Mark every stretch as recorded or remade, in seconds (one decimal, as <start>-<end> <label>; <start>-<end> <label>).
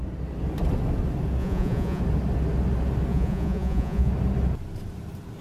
0.0-1.4 recorded; 1.4-2.0 remade; 2.0-3.1 recorded; 3.1-4.1 remade; 4.1-5.4 recorded